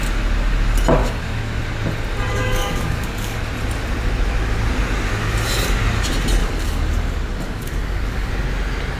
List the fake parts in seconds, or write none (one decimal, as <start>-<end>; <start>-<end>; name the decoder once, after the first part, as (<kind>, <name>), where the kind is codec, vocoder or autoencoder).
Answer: 1.0-1.6 (codec, DAC); 2.4-3.5; 6.4-8.3